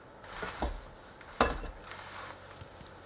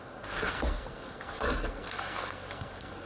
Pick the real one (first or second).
first